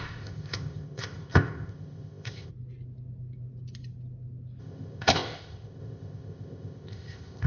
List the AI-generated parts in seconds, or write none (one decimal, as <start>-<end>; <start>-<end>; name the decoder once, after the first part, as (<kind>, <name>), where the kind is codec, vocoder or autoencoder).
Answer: 0.0-2.5 (codec, ZipCodec); 4.6-7.5